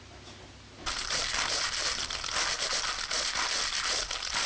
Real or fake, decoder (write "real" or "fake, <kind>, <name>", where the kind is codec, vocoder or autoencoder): real